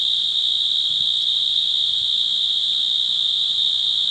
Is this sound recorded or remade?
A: recorded